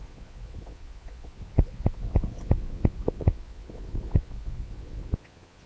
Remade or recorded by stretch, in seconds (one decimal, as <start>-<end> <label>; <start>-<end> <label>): 0.0-5.7 remade